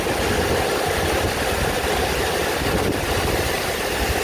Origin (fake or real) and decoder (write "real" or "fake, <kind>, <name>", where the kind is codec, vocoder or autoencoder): real